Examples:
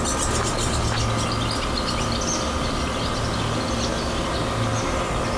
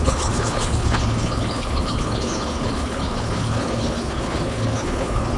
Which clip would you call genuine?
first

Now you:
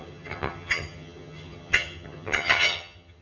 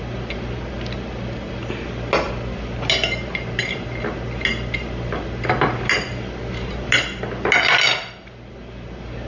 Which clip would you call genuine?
second